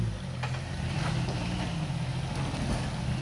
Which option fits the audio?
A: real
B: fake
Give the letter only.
A